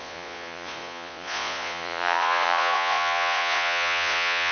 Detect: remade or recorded remade